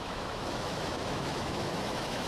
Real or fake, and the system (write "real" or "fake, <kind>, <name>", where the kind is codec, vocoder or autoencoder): fake, autoencoder, DAC-VAE